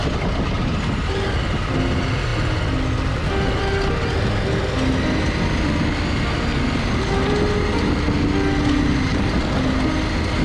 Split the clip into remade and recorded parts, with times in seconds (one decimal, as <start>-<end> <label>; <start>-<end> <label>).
0.0-10.4 recorded